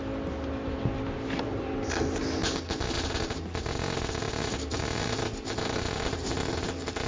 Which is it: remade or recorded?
recorded